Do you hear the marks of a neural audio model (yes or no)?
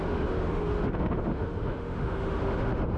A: yes